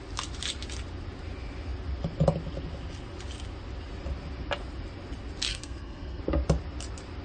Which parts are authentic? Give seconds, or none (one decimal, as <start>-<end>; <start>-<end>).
0.0-5.5; 6.2-7.2

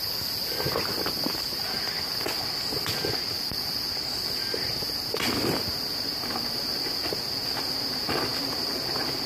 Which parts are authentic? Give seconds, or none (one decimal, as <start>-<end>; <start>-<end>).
0.0-9.3

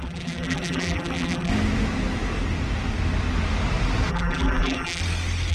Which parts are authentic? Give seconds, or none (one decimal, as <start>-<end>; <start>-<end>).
1.5-4.1; 5.0-5.5